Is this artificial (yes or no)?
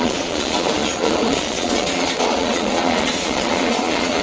yes